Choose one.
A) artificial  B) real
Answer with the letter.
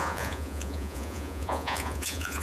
A